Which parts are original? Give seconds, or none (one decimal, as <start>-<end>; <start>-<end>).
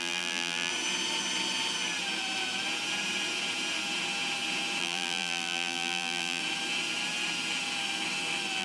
0.7-4.8; 6.4-8.6